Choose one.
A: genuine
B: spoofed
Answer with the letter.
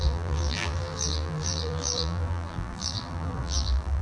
B